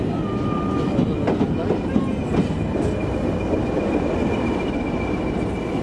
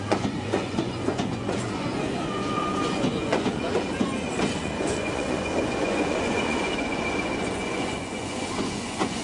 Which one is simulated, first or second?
second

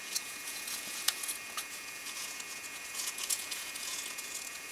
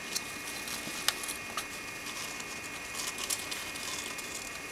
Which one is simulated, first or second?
first